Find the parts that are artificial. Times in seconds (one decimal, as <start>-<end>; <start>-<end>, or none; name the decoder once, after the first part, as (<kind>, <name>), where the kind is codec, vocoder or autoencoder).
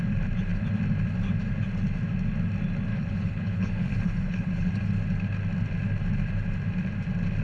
2.9-4.7 (codec, HILCodec)